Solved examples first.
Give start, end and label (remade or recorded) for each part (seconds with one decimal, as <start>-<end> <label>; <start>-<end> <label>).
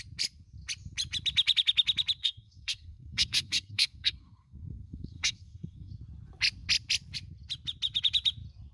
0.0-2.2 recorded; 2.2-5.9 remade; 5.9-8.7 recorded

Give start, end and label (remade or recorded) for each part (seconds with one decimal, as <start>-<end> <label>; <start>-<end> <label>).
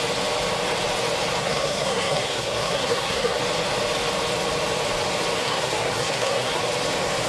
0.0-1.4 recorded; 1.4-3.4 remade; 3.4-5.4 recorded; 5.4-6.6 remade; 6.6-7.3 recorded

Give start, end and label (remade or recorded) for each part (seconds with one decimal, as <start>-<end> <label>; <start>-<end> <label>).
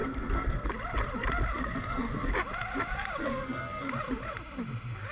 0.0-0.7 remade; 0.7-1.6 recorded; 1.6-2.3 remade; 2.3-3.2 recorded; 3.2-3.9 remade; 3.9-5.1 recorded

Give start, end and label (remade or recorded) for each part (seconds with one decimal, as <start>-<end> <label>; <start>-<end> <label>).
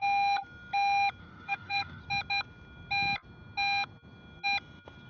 0.0-1.2 recorded; 1.2-2.0 remade; 2.0-5.1 recorded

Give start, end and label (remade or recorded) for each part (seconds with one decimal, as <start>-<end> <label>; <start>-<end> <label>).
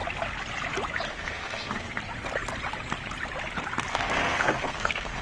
0.0-1.1 recorded; 1.1-2.0 remade; 2.0-3.9 recorded; 3.9-5.2 remade